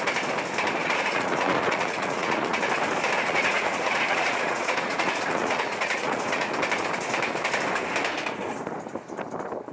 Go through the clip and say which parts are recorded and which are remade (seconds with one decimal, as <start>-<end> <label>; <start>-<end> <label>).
0.0-0.8 recorded; 0.8-2.7 remade; 2.7-3.2 recorded; 3.2-6.5 remade; 6.5-9.7 recorded